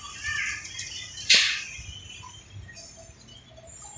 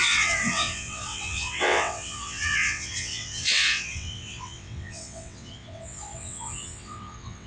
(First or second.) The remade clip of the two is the second